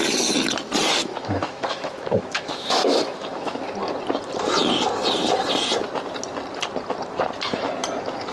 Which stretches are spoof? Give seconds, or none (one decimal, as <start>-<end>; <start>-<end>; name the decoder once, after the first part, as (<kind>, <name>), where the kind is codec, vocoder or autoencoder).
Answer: 1.0-3.6 (autoencoder, DAC-VAE)